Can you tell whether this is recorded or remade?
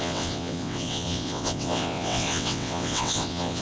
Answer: remade